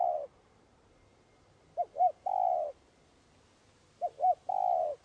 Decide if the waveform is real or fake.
real